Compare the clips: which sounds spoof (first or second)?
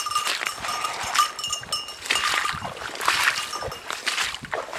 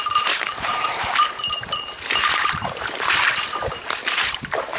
second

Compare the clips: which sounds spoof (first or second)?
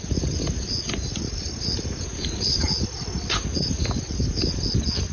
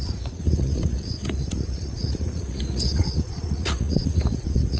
second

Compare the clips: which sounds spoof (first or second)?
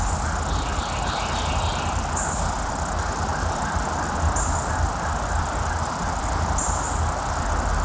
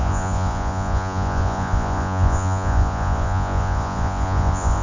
second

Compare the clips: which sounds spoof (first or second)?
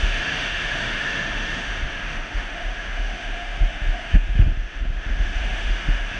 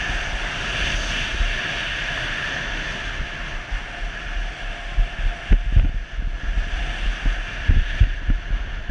first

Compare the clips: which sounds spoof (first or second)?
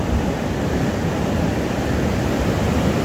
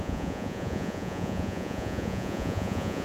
second